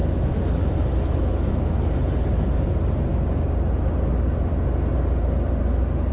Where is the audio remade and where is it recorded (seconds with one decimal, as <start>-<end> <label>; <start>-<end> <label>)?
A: 0.0-1.5 remade; 1.5-6.1 recorded